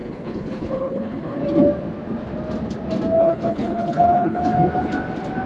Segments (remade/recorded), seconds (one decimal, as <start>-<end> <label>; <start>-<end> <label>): 0.0-1.4 remade; 1.4-3.2 recorded; 3.2-4.5 remade; 4.5-5.5 recorded